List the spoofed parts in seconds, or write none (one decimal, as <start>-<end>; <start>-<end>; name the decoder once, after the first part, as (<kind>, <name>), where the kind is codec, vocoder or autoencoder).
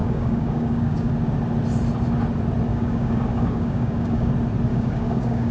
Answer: 0.0-1.1 (codec, DAC); 2.7-4.3; 4.7-5.5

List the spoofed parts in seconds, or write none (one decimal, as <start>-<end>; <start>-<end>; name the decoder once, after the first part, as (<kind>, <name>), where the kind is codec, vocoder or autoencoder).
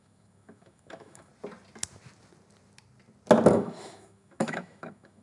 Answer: 0.0-1.3 (autoencoder, DAC-VAE); 3.5-5.2